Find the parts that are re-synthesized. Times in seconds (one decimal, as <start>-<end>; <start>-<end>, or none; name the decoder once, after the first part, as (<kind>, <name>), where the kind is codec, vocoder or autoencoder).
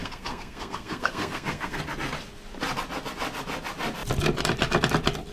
0.0-1.8 (codec, SNAC)